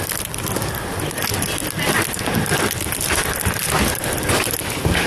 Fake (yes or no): no